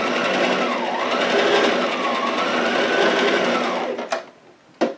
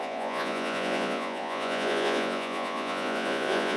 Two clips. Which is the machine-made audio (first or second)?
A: second